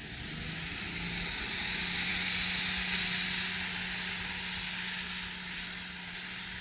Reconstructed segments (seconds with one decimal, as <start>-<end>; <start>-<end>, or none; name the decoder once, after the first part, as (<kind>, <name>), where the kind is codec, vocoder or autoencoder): none

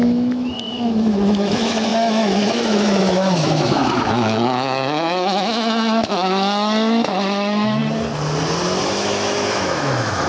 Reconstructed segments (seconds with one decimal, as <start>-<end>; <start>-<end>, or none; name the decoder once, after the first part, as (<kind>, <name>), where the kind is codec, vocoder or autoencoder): 0.0-7.8 (autoencoder, DAC-VAE); 8.8-10.3

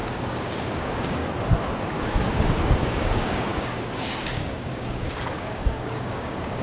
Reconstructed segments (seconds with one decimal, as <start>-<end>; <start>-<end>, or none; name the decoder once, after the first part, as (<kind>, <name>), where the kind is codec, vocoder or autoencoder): 0.0-1.2 (codec, DAC); 2.0-6.6

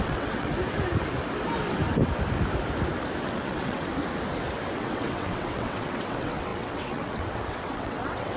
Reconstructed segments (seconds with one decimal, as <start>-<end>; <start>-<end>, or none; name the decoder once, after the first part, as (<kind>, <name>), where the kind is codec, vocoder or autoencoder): 0.0-0.5 (vocoder, WaveNeXt); 3.2-3.9; 4.7-8.4

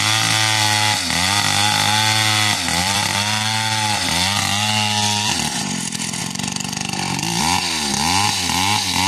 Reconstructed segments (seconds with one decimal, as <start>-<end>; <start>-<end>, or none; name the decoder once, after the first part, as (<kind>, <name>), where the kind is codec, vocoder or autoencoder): 2.8-6.2 (vocoder, BigVGAN v2); 6.8-7.4

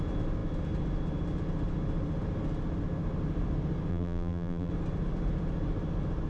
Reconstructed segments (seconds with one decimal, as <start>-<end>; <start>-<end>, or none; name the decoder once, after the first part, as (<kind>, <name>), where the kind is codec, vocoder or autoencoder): 3.9-4.7 (vocoder, BigVGAN v2)

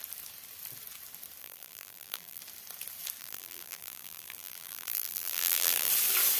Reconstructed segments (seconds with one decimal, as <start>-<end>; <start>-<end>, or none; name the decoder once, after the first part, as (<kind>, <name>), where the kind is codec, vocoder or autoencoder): 1.4-2.4 (vocoder, BigVGAN v2); 3.2-5.9

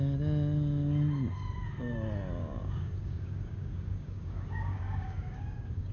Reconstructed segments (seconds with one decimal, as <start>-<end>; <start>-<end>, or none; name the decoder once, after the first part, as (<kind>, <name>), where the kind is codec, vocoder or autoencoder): 2.4-5.9 (codec, DAC)